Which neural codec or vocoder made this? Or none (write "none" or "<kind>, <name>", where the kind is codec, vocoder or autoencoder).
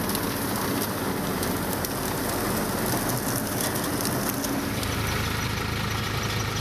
none